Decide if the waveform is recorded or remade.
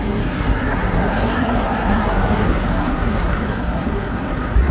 remade